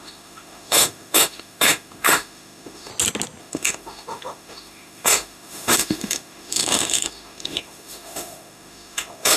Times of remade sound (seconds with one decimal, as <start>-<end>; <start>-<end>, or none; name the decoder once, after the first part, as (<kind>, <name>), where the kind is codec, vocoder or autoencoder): 0.0-2.9 (autoencoder, DAC-VAE); 3.4-9.4